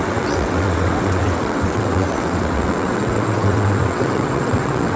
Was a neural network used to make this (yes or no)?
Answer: yes